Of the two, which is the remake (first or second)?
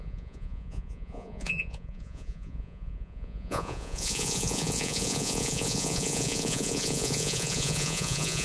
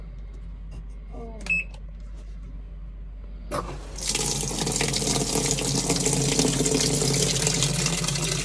first